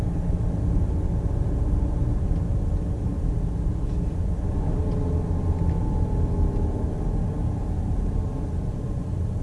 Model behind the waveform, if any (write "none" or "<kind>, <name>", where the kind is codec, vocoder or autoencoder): none